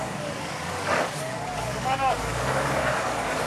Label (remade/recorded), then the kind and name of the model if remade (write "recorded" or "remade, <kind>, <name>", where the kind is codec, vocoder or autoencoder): remade, codec, DAC